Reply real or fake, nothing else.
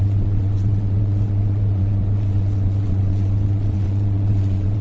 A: fake